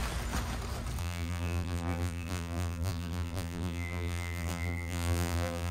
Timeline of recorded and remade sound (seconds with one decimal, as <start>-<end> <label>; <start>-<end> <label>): 0.0-1.0 recorded; 1.0-5.7 remade